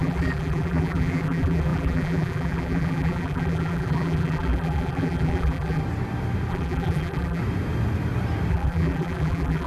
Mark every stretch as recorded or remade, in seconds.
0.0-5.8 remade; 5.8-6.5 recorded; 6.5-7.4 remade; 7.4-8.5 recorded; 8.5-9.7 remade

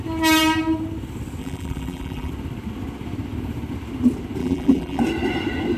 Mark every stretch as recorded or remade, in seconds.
0.0-1.4 recorded; 1.4-2.3 remade; 2.3-4.4 recorded; 4.4-5.0 remade; 5.0-5.8 recorded

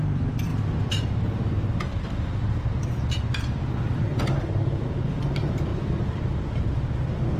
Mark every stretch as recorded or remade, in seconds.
0.0-0.5 remade; 0.5-1.8 recorded; 1.8-2.7 remade; 2.7-3.9 recorded; 3.9-5.7 remade; 5.7-6.2 recorded; 6.2-7.4 remade

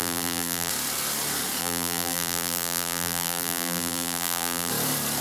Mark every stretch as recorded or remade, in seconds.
0.0-0.7 remade; 0.7-1.6 recorded; 1.6-4.7 remade; 4.7-5.2 recorded